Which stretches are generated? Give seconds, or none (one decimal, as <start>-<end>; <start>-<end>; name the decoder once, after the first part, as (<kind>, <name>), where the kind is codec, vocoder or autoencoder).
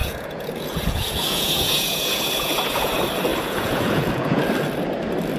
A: 0.0-2.9 (vocoder, Vocos); 3.3-4.4